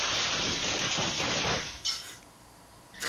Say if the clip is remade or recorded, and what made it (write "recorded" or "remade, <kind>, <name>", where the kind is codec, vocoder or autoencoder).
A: remade, vocoder, BigVGAN v2